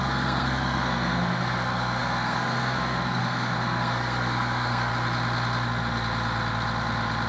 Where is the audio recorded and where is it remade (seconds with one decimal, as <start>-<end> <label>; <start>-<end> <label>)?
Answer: 0.0-4.9 remade; 4.9-7.3 recorded